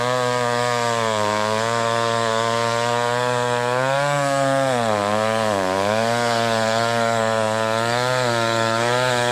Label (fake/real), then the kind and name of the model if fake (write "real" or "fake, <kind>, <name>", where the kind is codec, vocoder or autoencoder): fake, codec, DAC